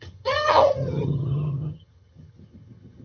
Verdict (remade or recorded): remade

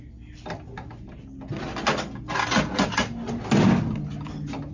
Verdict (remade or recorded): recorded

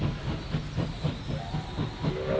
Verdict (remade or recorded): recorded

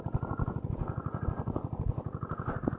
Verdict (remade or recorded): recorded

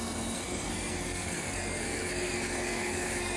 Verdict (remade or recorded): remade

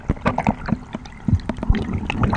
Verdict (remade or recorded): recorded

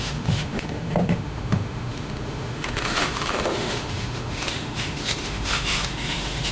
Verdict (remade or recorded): remade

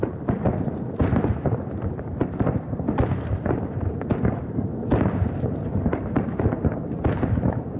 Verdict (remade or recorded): remade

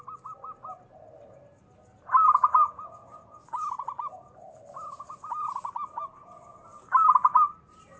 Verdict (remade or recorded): recorded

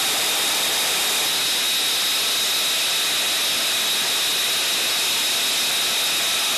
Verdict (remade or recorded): recorded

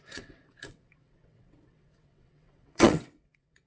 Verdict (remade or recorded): remade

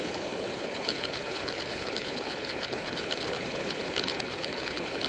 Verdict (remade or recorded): remade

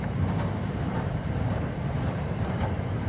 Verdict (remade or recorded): remade